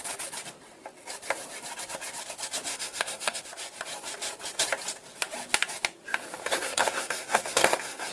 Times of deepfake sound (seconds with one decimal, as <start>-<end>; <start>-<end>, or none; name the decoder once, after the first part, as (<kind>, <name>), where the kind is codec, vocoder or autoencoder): 2.7-3.4 (codec, SNAC); 6.4-8.1